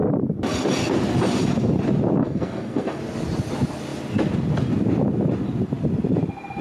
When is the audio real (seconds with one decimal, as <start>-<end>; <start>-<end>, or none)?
0.0-2.2; 3.0-6.6